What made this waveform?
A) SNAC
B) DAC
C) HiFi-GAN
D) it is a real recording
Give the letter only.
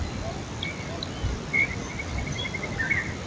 D